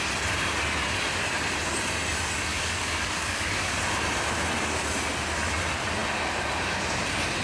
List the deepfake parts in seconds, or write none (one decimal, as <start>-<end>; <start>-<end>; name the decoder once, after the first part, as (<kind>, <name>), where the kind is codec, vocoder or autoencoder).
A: 2.5-3.8 (codec, DAC)